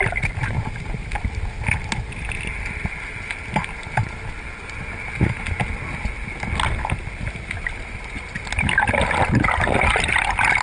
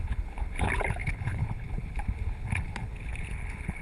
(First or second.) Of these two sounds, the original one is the first